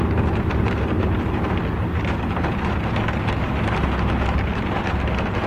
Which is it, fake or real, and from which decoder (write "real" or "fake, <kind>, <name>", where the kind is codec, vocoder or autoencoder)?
real